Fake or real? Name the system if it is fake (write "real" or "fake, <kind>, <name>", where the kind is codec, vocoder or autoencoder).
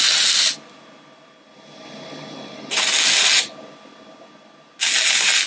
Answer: real